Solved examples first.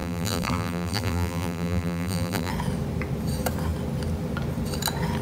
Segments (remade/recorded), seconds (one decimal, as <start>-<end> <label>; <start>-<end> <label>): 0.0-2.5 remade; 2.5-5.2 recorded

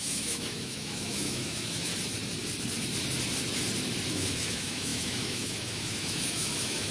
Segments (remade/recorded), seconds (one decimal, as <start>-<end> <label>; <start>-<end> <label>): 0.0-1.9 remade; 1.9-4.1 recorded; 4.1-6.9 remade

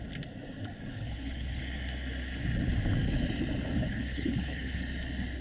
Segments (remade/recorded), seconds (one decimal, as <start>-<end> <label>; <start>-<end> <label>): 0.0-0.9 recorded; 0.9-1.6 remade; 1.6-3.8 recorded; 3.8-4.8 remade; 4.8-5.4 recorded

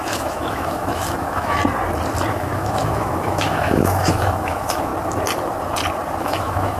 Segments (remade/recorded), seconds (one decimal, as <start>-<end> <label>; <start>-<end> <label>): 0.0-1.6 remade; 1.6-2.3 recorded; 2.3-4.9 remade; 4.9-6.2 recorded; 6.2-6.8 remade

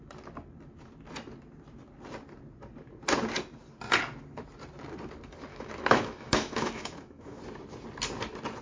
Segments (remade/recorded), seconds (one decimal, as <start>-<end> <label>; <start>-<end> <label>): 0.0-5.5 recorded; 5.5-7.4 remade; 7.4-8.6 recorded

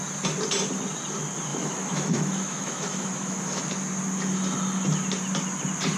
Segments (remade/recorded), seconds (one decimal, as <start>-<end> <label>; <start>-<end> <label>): 0.0-1.5 recorded; 1.5-3.6 remade; 3.6-6.0 recorded

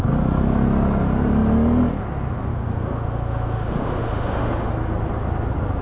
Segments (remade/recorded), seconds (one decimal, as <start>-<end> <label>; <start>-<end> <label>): 0.0-2.5 recorded; 2.5-4.7 remade; 4.7-5.8 recorded

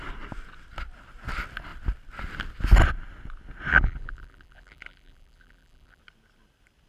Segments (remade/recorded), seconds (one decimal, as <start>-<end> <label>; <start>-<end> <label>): 0.0-3.7 recorded; 3.7-6.0 remade; 6.0-6.9 recorded